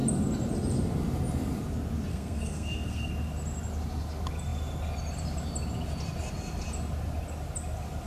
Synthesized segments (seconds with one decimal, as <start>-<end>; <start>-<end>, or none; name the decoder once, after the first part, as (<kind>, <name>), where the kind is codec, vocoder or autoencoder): 2.1-3.1 (codec, SNAC)